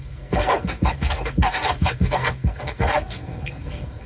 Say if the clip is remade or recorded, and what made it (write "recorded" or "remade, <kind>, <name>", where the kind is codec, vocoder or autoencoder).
remade, codec, SNAC